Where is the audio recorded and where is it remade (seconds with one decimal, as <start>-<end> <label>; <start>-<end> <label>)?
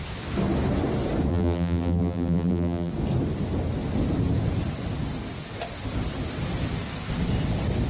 0.0-1.3 recorded; 1.3-2.9 remade; 2.9-7.9 recorded